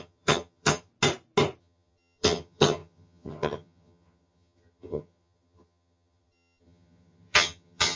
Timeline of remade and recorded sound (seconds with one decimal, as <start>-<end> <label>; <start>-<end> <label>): 0.0-0.9 remade; 0.9-1.6 recorded; 1.6-8.0 remade